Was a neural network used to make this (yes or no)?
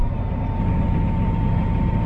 yes